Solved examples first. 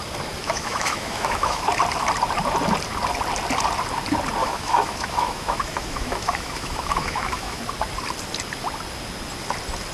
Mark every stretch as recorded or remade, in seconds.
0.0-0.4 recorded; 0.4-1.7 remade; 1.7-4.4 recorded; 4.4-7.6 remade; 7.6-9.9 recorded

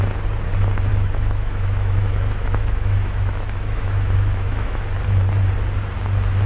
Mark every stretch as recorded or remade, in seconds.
0.0-0.9 recorded; 0.9-4.8 remade; 4.8-6.5 recorded

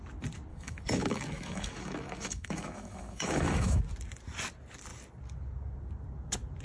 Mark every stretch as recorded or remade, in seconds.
0.0-0.5 recorded; 0.5-3.8 remade; 3.8-6.6 recorded

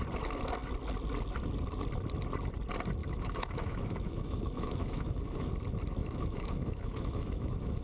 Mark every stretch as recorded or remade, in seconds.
0.0-3.0 recorded; 3.0-5.5 remade; 5.5-6.0 recorded; 6.0-7.8 remade

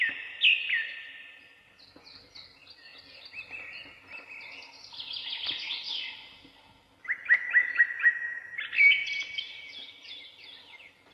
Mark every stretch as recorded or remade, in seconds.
0.0-11.1 recorded

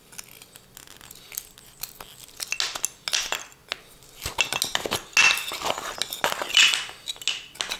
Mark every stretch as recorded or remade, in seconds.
0.0-7.8 recorded

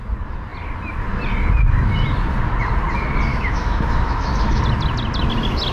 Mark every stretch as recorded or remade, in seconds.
0.0-3.3 recorded; 3.3-4.6 remade; 4.6-5.7 recorded